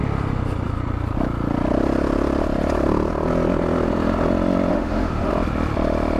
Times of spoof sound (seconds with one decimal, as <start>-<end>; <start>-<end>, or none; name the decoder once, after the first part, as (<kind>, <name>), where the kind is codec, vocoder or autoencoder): 4.7-5.3 (autoencoder, DAC-VAE)